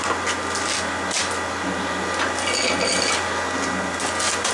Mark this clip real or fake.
real